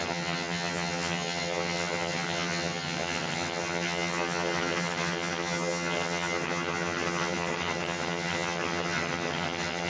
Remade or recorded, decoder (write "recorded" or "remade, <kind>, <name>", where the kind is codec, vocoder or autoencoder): remade, vocoder, HiFi-GAN